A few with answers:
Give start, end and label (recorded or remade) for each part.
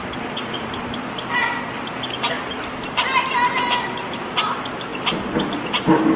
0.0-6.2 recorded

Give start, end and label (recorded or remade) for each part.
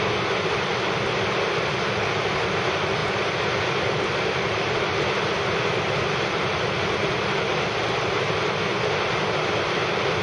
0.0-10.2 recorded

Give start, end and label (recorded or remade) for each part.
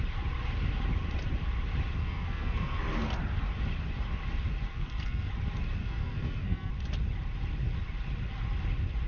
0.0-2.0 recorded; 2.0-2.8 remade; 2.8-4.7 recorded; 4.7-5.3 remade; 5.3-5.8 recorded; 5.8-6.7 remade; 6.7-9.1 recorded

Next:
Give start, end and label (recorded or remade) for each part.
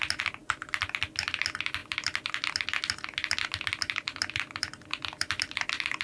0.0-6.0 recorded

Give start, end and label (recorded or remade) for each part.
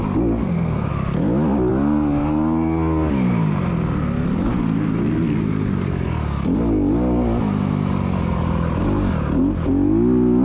0.0-0.4 recorded; 0.4-0.9 remade; 0.9-10.4 recorded